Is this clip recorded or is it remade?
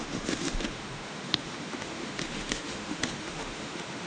remade